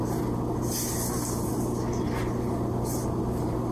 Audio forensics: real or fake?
real